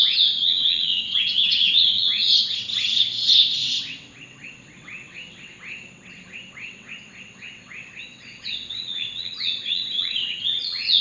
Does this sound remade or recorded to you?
remade